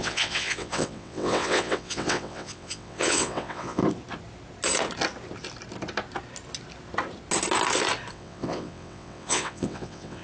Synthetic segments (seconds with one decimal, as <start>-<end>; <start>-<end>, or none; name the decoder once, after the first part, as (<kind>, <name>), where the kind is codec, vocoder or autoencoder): 0.0-3.8 (vocoder, WaveNeXt); 8.1-10.2